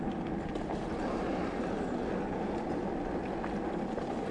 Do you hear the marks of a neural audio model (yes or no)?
no